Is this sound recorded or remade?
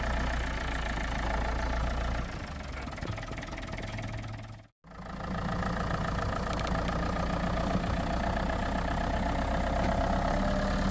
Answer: recorded